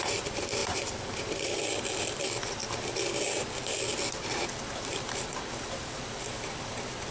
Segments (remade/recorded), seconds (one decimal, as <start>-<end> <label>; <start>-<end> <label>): 0.0-2.6 remade; 2.6-4.6 recorded; 4.6-7.1 remade